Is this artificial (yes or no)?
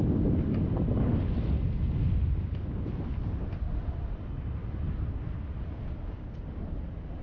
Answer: no